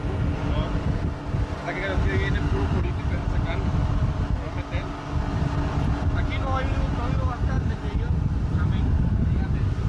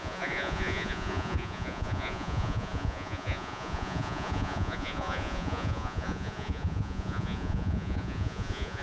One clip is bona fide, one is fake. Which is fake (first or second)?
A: second